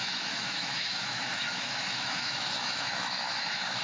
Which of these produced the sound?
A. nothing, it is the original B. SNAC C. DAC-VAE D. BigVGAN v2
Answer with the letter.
C